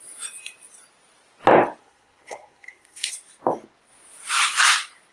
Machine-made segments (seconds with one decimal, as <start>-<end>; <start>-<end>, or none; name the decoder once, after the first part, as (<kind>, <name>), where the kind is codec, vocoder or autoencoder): 1.8-3.1 (codec, SNAC)